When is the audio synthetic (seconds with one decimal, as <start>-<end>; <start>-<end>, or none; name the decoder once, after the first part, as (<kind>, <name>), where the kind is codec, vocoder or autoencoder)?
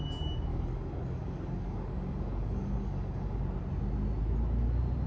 0.5-3.4 (codec, DAC)